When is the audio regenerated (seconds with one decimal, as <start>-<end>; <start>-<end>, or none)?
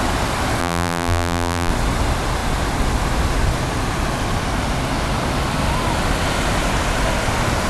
0.6-1.7